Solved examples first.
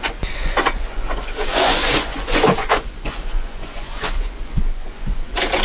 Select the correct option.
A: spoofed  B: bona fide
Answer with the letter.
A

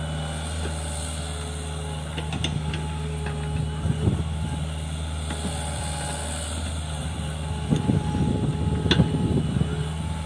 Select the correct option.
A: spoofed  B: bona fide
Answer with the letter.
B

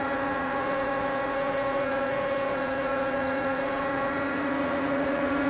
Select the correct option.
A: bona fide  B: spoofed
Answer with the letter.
B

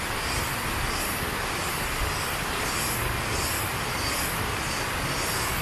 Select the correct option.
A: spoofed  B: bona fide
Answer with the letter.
B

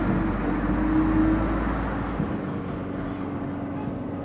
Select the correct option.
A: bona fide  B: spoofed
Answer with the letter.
A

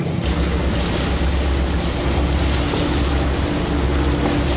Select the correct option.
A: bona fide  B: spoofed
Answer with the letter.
A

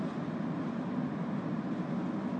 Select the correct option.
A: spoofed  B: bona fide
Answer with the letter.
B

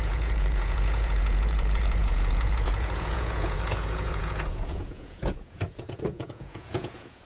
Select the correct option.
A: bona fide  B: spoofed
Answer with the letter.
B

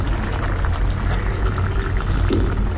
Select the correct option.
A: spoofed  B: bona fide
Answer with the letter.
B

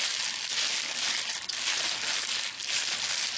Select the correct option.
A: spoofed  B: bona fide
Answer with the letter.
B